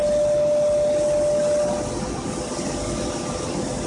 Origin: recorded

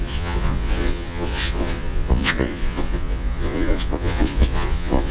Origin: remade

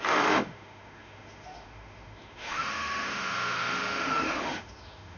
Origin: remade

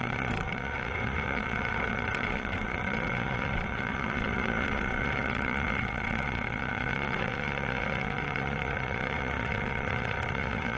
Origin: remade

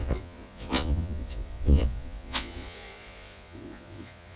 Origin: remade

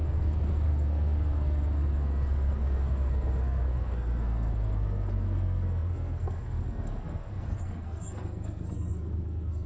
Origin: remade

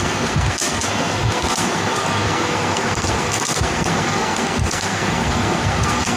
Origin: remade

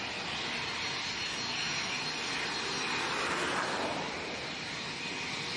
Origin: recorded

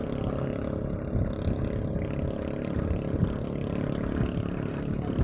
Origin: recorded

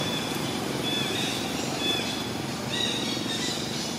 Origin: recorded